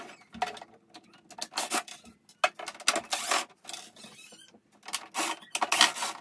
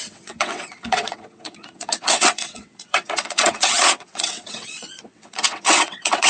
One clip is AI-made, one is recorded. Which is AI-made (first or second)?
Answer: second